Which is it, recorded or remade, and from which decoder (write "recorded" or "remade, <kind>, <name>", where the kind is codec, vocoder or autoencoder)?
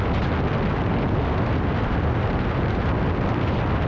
recorded